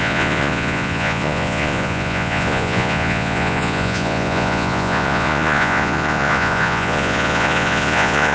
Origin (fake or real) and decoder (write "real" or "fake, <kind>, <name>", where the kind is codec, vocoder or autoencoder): fake, vocoder, Vocos